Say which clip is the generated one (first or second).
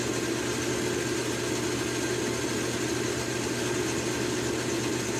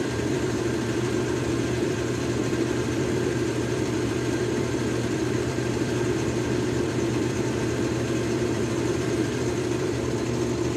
second